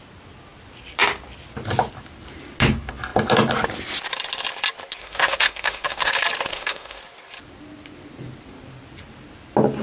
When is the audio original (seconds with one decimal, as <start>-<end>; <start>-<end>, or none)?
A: 0.0-5.0; 6.1-6.5; 7.0-9.8